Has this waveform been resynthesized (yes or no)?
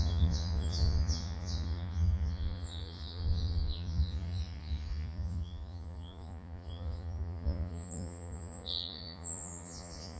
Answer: yes